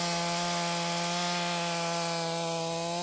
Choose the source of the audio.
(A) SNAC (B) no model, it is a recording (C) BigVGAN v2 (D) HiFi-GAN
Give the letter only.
B